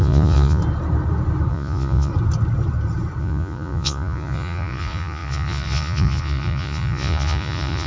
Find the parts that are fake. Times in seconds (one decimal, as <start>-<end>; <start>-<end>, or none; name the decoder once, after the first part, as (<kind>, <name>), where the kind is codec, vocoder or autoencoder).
0.0-0.6 (vocoder, Vocos); 1.5-2.1; 3.2-7.9